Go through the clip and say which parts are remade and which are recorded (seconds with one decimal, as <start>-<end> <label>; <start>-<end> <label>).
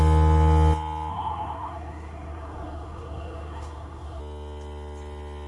0.0-1.1 recorded; 1.1-4.2 remade; 4.2-5.5 recorded